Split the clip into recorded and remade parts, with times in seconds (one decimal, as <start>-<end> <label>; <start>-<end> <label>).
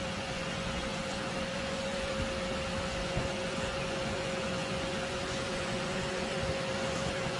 0.0-2.1 remade; 2.1-2.8 recorded; 2.8-7.4 remade